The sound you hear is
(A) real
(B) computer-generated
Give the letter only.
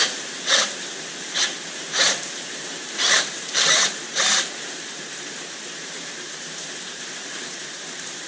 B